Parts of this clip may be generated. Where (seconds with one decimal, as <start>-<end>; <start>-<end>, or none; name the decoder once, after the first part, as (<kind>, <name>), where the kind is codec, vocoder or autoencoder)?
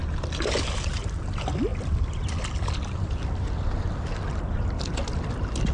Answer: none